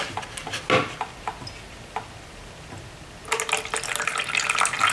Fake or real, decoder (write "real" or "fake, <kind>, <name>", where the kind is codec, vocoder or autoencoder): real